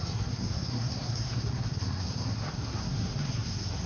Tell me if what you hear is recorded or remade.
remade